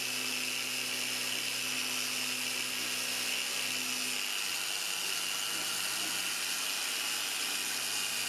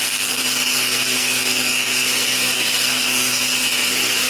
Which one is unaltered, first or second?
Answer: first